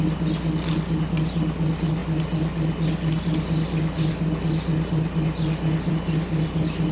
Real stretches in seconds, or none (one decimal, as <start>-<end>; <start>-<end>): 0.0-6.9